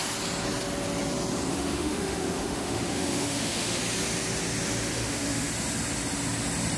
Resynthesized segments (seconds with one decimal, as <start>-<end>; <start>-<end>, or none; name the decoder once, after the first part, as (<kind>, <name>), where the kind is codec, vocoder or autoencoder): 1.5-3.8 (autoencoder, DAC-VAE); 4.9-5.5